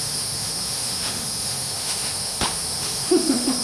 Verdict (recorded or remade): remade